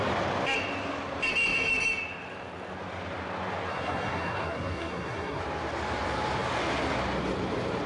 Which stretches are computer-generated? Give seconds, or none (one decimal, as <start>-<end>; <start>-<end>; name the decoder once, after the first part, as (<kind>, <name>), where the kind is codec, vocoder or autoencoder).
3.7-5.4 (codec, SNAC)